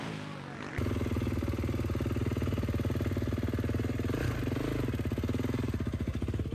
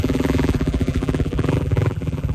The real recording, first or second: first